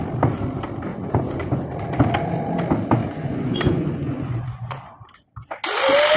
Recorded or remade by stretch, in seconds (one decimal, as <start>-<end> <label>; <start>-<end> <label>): 0.0-0.9 recorded; 0.9-1.7 remade; 1.7-3.0 recorded; 3.0-4.8 remade; 4.8-6.2 recorded